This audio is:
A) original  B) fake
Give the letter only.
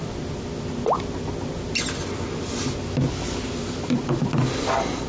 A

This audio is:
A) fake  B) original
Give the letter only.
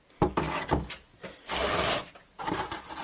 B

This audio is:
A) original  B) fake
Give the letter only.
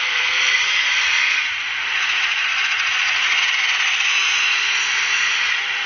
B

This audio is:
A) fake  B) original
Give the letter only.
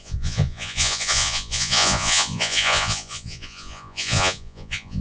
A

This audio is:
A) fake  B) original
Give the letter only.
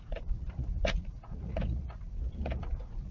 A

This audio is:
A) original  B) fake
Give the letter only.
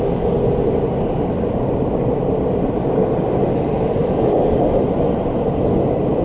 A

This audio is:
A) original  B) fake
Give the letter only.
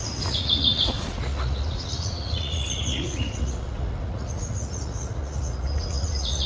B